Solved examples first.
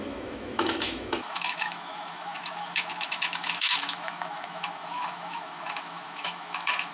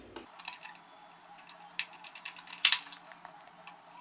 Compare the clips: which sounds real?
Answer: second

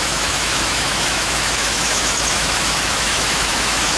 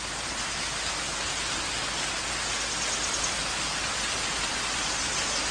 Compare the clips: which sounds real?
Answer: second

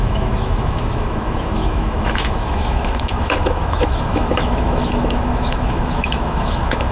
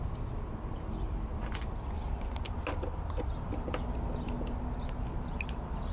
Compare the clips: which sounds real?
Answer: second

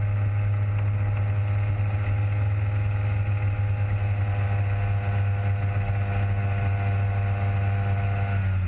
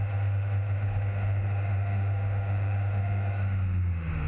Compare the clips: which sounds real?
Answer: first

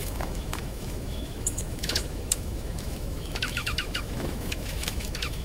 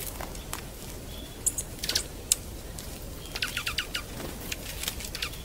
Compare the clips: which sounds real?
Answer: second